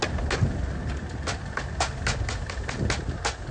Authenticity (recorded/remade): recorded